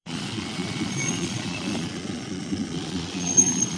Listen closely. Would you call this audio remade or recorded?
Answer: remade